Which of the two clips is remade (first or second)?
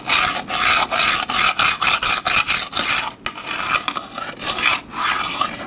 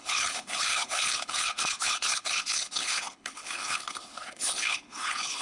second